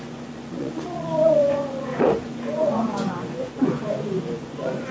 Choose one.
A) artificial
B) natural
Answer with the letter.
A